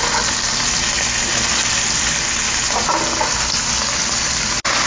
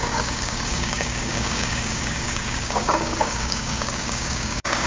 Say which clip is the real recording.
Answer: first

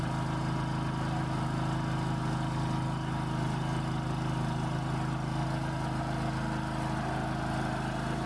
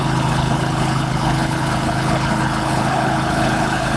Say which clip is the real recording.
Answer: first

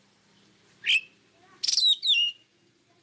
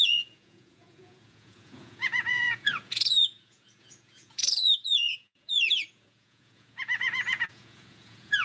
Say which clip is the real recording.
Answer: first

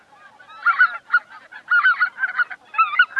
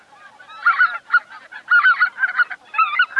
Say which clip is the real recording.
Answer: first